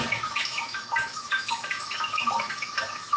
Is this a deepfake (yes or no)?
yes